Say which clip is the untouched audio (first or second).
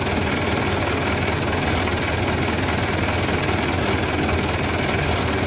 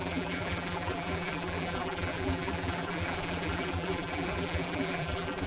first